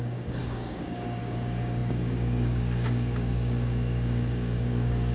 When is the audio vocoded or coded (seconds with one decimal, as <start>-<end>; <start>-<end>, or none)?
0.0-5.1

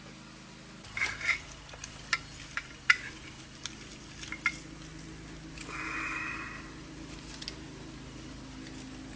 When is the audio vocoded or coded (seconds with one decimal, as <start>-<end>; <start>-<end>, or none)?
none